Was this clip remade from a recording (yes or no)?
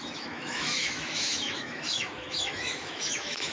yes